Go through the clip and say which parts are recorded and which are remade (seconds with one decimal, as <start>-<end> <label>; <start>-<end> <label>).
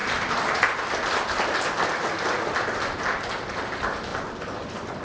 0.0-3.0 remade; 3.0-5.0 recorded